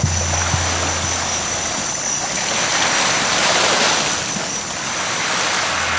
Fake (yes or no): no